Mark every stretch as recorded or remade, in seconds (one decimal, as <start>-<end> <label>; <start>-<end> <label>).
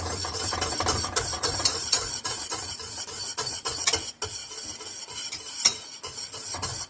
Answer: 0.0-1.3 recorded; 1.3-2.6 remade; 2.6-3.3 recorded; 3.3-3.9 remade; 3.9-6.9 recorded